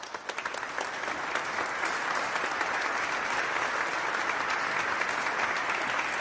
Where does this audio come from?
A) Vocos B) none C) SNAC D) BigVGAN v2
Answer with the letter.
B